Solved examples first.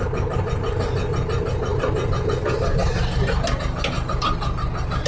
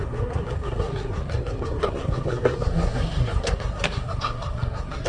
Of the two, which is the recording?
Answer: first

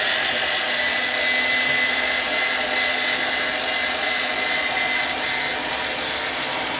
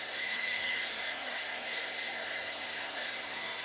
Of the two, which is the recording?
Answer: first